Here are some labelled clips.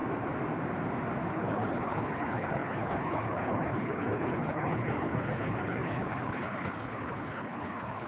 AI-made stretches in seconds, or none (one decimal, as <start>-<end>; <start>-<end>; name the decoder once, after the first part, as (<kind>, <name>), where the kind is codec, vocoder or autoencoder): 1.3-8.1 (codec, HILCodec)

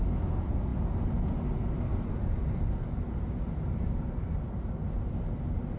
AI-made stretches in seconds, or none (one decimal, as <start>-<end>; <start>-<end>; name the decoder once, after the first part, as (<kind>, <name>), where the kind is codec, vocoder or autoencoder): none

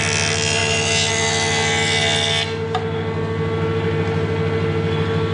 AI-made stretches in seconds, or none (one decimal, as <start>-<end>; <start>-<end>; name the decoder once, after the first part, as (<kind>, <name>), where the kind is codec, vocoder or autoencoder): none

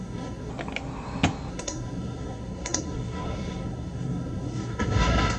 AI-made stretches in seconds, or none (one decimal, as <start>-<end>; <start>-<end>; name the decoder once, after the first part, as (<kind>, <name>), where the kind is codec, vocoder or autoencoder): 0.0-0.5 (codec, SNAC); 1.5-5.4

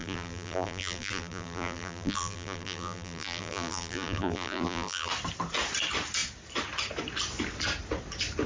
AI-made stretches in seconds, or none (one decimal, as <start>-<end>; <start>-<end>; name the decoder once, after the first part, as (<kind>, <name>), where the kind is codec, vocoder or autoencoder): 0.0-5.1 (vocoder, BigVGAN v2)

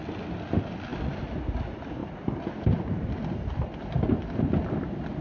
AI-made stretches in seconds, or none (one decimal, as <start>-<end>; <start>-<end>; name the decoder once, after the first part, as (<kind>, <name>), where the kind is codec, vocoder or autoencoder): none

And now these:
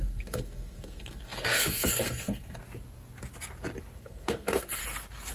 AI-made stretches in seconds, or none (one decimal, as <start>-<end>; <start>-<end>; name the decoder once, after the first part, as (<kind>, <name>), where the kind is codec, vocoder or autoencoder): 0.0-2.6 (codec, SNAC); 4.0-4.8